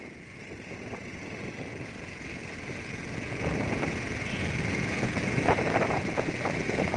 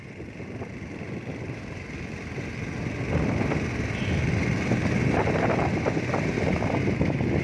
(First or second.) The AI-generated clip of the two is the first